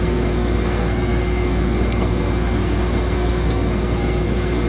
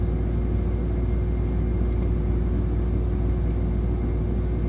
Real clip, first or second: second